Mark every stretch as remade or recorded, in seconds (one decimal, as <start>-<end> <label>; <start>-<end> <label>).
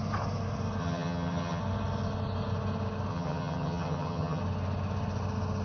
0.0-0.8 recorded; 0.8-1.6 remade; 1.6-3.1 recorded; 3.1-4.4 remade; 4.4-5.6 recorded